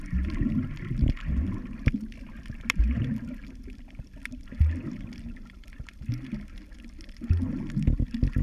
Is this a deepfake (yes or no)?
no